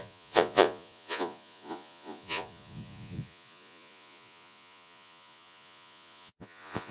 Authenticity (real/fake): fake